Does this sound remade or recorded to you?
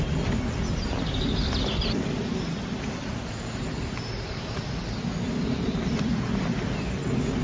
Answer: recorded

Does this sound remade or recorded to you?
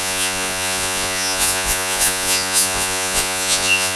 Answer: remade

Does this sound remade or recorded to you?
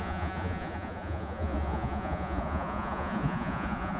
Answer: remade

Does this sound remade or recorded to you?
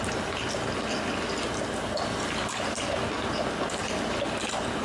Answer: recorded